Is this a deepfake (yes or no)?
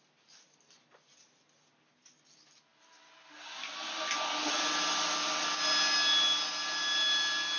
no